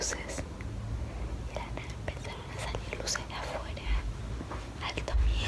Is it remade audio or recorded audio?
recorded